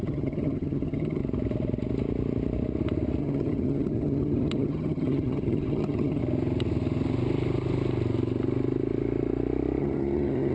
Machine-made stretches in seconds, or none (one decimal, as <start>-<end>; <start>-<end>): 0.0-1.2; 3.2-6.2; 9.8-10.5